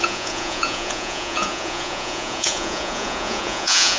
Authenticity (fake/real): fake